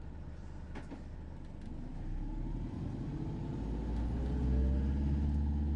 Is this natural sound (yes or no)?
yes